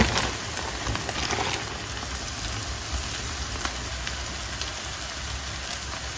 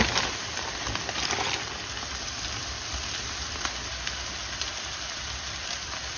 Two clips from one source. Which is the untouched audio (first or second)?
first